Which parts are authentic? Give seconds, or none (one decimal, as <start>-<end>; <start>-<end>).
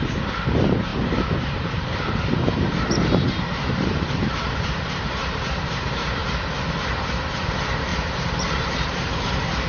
6.2-6.8